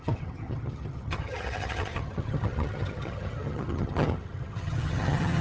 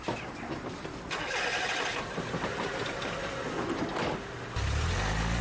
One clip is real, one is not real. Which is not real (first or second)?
first